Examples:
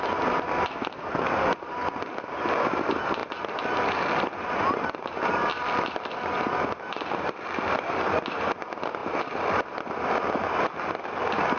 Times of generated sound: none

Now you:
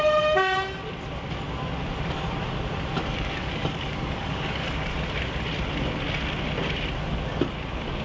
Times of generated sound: 3.0-4.9 (codec, DAC)

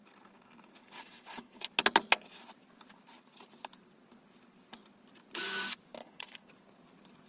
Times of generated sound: 0.8-1.6 (codec, DAC); 6.0-6.5

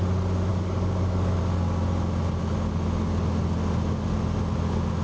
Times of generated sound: 0.5-1.4 (codec, DAC)